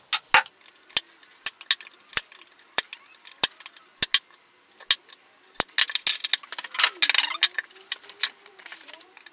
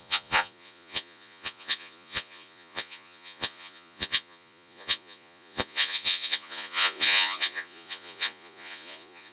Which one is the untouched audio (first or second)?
first